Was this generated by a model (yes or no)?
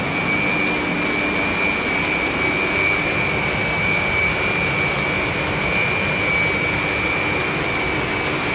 no